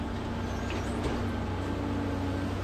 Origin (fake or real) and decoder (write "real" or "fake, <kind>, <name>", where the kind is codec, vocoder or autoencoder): real